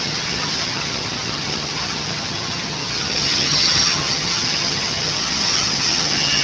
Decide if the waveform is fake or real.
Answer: fake